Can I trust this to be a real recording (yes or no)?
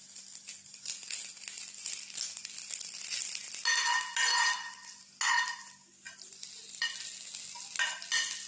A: yes